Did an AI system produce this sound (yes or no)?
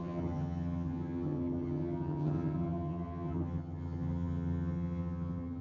yes